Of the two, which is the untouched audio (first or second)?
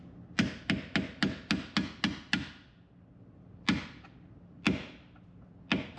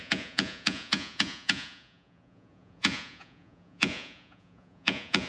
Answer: first